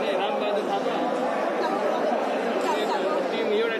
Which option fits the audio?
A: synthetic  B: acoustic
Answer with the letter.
B